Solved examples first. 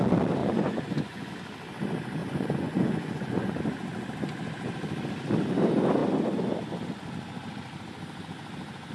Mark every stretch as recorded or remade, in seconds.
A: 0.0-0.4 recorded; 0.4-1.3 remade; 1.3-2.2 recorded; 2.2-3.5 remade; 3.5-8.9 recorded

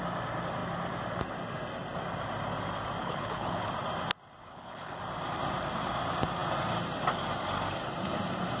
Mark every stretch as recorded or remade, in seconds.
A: 0.0-3.0 recorded; 3.0-3.7 remade; 3.7-4.4 recorded; 4.4-5.0 remade; 5.0-8.6 recorded

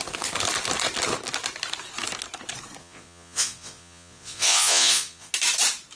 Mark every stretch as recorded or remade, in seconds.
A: 0.0-2.8 recorded; 2.8-5.3 remade; 5.3-6.0 recorded

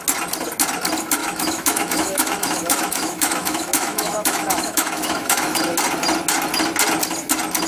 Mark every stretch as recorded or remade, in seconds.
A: 0.0-1.2 recorded; 1.2-5.6 remade; 5.6-7.7 recorded

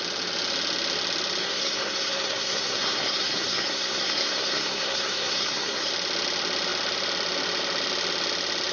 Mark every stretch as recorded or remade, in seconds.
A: 0.0-1.4 recorded; 1.4-5.9 remade; 5.9-8.7 recorded

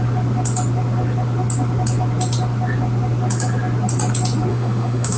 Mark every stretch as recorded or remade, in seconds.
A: 0.0-4.5 recorded; 4.5-5.2 remade

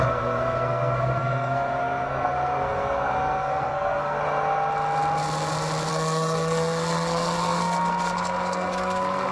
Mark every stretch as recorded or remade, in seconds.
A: 0.0-4.2 remade; 4.2-5.9 recorded; 5.9-9.3 remade

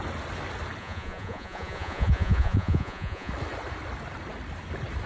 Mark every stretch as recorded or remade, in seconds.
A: 0.0-0.8 recorded; 0.8-3.3 remade; 3.3-5.1 recorded